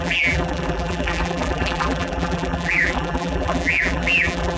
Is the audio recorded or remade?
remade